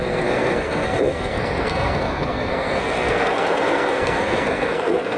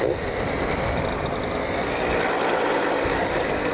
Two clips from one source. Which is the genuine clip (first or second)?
second